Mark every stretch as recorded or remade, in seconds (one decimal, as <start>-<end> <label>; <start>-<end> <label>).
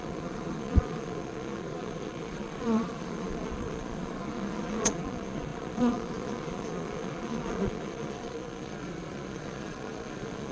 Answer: 0.0-10.5 remade